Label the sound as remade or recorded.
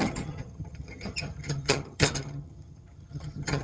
remade